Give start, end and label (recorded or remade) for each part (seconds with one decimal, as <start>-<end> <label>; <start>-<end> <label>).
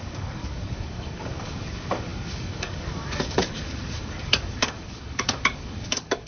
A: 0.0-6.3 remade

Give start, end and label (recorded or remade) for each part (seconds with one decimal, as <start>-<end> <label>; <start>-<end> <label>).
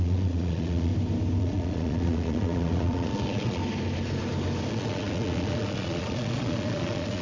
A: 0.0-0.9 remade; 0.9-1.4 recorded; 1.4-3.6 remade; 3.6-4.7 recorded; 4.7-7.2 remade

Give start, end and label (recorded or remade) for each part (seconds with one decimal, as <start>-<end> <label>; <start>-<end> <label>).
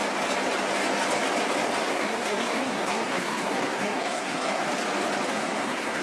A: 0.0-1.8 recorded; 1.8-4.6 remade; 4.6-5.3 recorded; 5.3-6.0 remade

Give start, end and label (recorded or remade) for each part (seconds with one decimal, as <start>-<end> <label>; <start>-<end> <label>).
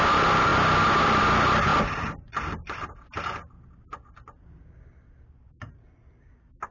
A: 0.0-6.7 recorded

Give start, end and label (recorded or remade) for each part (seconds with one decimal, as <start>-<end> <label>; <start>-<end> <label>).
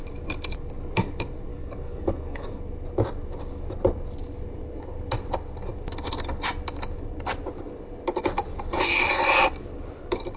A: 0.0-1.5 recorded; 1.5-2.6 remade; 2.6-10.4 recorded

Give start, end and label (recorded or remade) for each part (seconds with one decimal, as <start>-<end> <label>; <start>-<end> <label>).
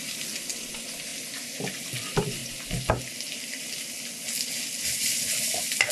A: 0.0-2.4 remade; 2.4-4.8 recorded; 4.8-5.9 remade